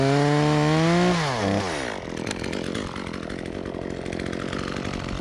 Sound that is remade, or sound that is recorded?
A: recorded